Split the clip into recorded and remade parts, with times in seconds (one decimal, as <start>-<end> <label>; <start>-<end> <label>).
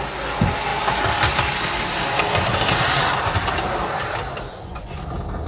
0.0-4.5 recorded; 4.5-5.0 remade; 5.0-5.5 recorded